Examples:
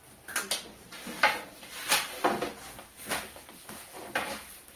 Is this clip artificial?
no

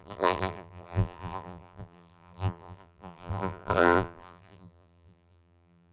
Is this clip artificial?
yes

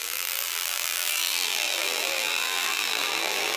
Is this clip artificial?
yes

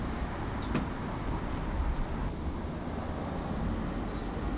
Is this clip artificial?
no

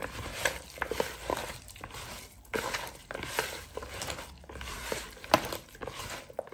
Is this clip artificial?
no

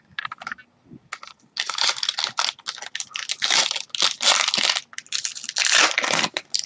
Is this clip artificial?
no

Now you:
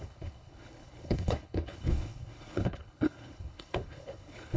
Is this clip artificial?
yes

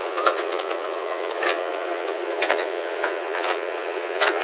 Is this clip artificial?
yes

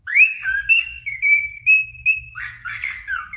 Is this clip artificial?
yes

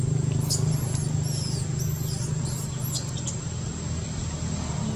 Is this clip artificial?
no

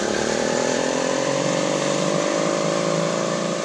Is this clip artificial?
no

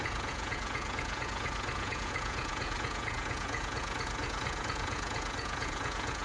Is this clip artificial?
yes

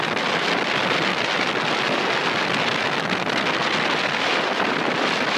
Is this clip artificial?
no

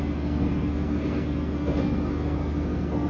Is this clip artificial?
yes